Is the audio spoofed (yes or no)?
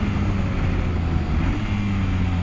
no